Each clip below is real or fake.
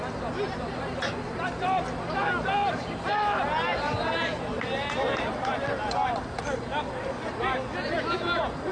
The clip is real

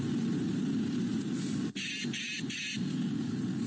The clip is real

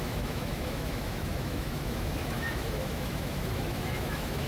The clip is fake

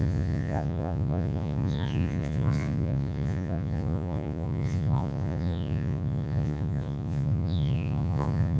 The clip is fake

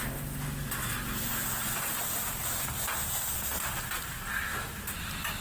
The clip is real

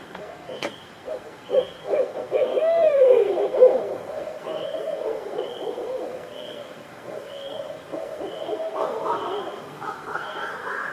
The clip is fake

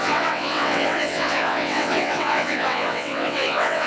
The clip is fake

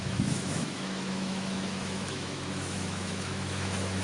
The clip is fake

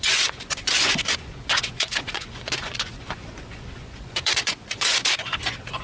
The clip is fake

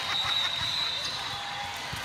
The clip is real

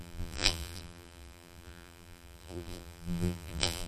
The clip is fake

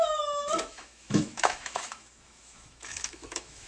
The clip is fake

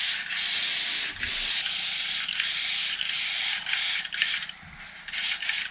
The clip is real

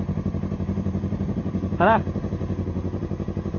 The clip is fake